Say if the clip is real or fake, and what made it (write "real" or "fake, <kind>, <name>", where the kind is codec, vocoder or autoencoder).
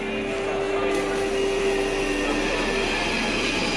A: real